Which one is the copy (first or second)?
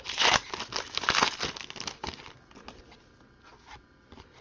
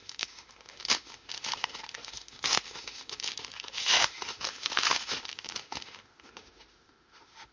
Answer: second